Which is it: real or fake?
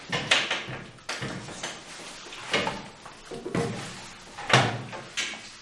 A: real